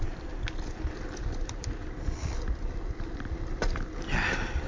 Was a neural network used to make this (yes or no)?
no